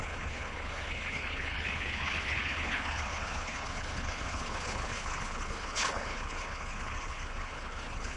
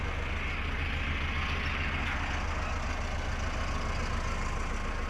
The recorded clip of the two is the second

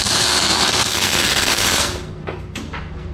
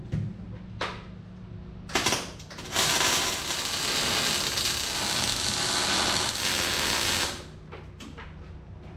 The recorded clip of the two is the second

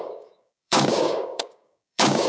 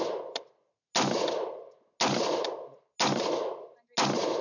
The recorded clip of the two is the second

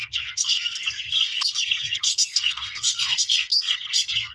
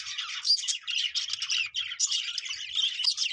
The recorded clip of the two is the second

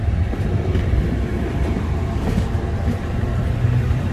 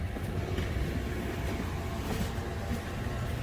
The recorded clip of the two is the second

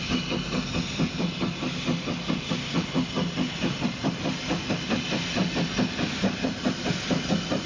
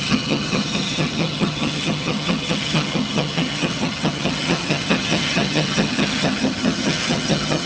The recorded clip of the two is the first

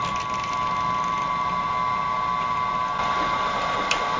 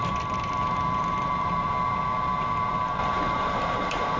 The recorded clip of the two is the first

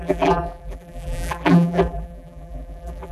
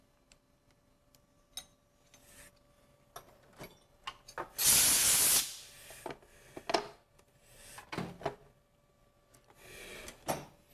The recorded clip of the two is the second